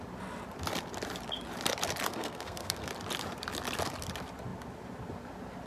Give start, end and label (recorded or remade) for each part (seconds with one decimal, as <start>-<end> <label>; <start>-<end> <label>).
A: 0.0-2.1 recorded; 2.1-2.9 remade; 2.9-5.7 recorded